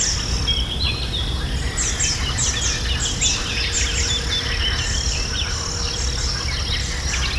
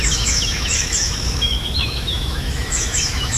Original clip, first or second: first